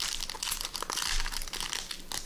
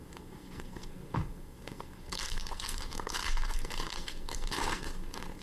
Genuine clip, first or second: first